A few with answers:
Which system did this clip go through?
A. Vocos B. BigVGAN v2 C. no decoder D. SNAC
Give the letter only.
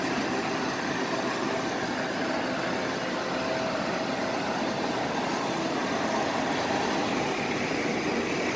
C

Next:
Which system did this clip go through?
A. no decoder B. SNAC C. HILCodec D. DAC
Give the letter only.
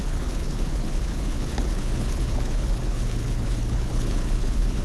C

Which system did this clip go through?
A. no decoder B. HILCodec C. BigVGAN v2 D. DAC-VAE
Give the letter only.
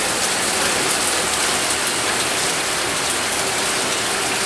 A